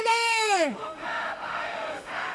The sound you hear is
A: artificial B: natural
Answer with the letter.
A